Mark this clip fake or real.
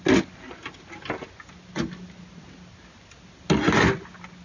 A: real